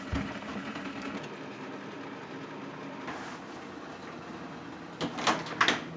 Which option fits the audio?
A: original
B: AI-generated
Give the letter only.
A